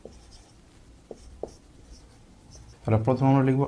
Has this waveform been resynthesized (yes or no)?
yes